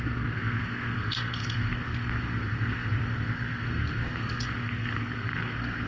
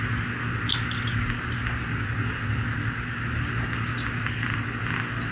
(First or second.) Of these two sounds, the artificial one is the first